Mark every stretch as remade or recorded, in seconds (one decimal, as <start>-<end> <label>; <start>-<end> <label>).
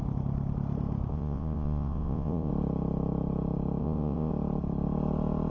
0.0-1.1 recorded; 1.1-2.5 remade; 2.5-3.8 recorded; 3.8-4.3 remade; 4.3-5.5 recorded